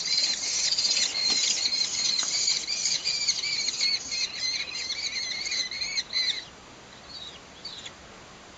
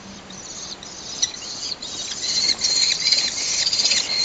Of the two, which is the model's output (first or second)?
second